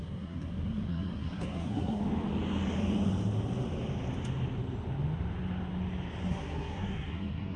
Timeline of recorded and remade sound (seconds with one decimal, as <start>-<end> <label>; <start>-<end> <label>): 0.0-2.0 remade; 2.0-6.3 recorded; 6.3-7.6 remade